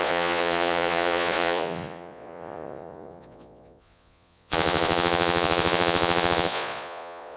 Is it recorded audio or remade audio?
remade